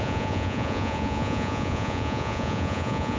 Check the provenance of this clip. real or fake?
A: fake